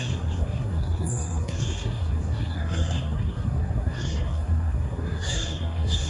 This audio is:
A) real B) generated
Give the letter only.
B